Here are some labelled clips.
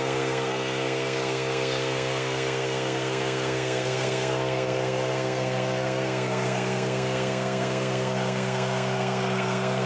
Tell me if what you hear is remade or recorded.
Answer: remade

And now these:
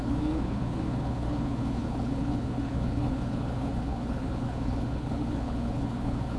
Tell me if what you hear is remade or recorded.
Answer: remade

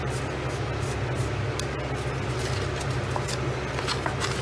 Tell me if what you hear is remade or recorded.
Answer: recorded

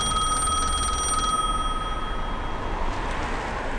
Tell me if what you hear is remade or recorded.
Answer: recorded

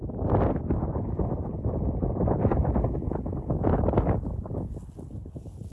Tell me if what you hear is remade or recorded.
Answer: recorded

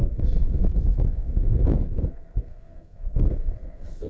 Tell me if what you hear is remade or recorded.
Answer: remade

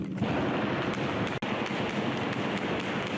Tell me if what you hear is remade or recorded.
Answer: recorded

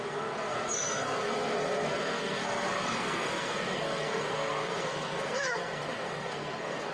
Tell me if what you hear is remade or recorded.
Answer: remade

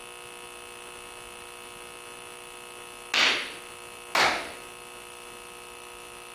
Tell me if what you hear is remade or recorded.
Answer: recorded